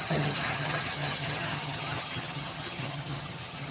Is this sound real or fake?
fake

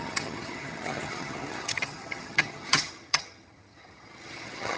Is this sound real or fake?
fake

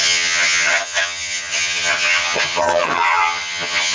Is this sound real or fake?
fake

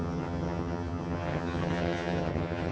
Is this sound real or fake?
fake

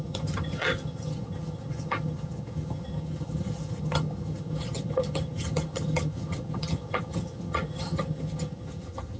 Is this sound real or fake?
fake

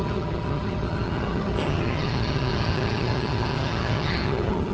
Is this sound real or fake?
fake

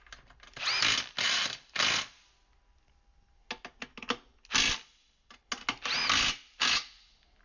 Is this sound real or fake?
real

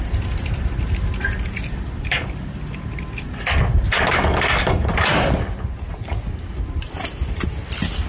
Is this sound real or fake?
real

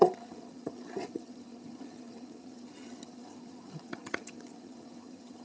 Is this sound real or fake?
fake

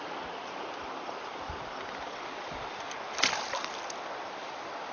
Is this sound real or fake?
real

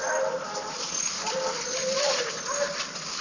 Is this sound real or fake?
real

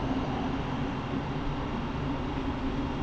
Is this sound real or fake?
real